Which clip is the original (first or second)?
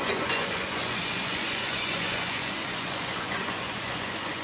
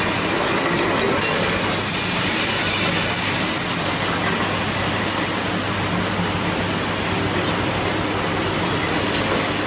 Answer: second